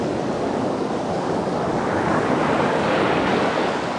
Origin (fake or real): fake